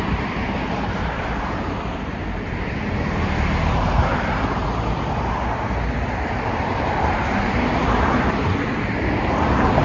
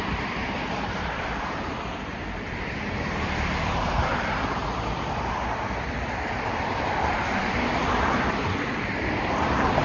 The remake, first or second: second